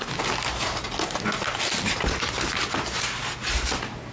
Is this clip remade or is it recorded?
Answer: recorded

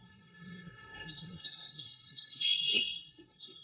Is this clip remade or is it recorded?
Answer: remade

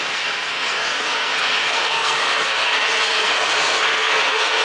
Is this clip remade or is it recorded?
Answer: remade